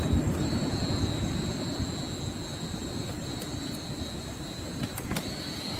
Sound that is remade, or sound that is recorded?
recorded